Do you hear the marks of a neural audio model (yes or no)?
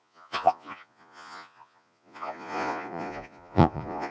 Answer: yes